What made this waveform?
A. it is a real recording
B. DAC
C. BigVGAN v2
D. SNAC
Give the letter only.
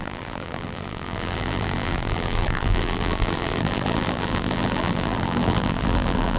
C